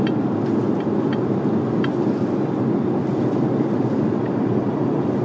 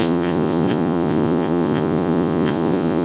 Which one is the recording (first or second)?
first